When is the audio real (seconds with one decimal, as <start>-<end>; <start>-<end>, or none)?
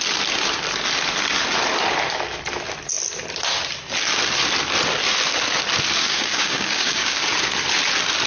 0.0-6.0; 7.2-8.3